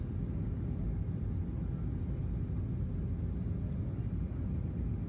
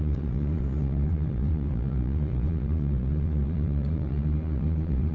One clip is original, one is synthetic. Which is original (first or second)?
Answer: first